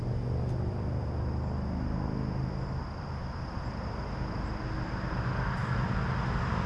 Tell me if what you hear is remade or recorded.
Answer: recorded